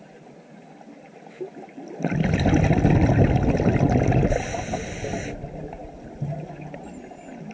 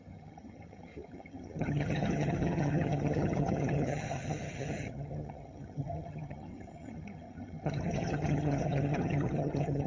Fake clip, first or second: second